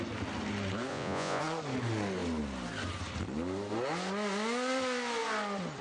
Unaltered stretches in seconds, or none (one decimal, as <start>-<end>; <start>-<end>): 0.0-0.9; 1.4-5.8